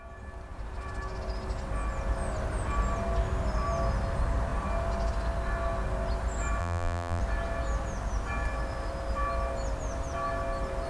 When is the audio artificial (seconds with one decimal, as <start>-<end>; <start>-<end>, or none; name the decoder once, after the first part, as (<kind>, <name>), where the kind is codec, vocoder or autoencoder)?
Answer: 6.6-7.2 (vocoder, BigVGAN v2)